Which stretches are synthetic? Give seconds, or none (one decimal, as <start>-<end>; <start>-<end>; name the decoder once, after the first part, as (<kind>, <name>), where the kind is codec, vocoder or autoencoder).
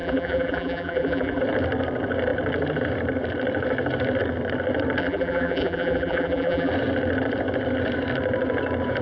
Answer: 0.0-1.4 (vocoder, BigVGAN v2); 5.0-6.7